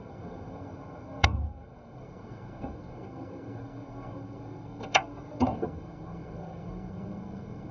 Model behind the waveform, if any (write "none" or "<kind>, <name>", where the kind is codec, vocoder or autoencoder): codec, SNAC